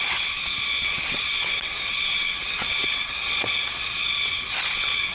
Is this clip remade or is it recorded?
remade